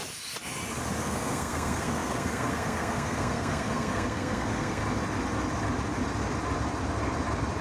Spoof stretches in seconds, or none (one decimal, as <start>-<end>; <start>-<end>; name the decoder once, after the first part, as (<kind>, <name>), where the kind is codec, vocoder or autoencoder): 1.0-4.8 (codec, SNAC)